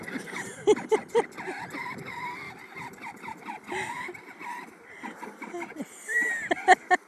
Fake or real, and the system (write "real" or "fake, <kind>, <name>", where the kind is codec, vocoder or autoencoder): real